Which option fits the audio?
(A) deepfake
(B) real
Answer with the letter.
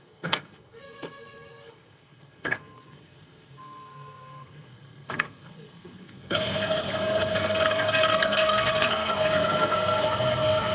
A